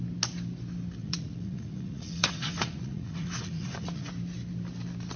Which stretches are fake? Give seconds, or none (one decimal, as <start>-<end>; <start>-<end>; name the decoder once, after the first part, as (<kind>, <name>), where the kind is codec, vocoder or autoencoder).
1.0-4.1 (vocoder, Vocos)